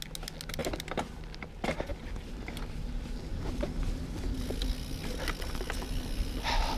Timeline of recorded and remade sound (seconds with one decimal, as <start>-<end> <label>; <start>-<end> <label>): 0.0-6.8 recorded